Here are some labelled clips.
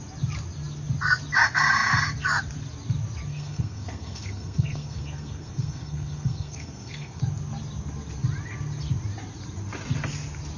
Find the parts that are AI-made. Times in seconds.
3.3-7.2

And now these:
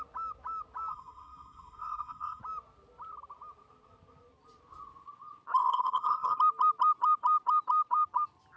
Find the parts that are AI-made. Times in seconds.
0.9-2.4; 5.6-6.4

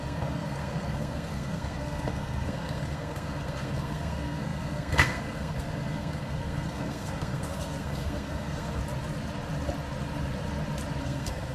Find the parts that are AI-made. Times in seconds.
0.0-8.8; 11.0-11.5

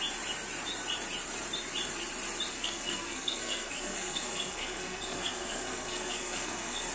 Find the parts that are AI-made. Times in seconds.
2.5-6.9

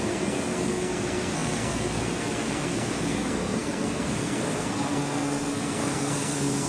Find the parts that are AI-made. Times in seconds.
0.0-6.7

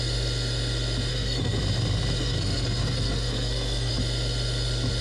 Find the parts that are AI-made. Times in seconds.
1.1-1.6; 2.2-3.9